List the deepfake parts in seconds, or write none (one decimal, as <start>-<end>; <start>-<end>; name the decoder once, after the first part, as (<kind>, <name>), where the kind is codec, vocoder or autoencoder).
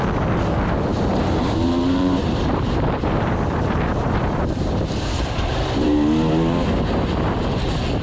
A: 0.9-5.6 (vocoder, BigVGAN v2)